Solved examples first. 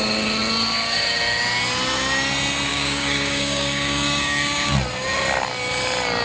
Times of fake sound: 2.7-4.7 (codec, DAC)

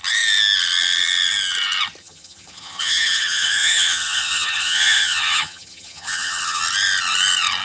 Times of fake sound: 2.0-6.6 (vocoder, HiFi-GAN)

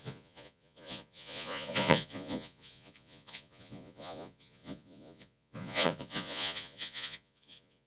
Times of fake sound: 0.0-7.9 (vocoder, Vocos)

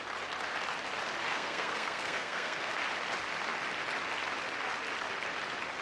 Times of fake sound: 1.3-2.7 (codec, SNAC)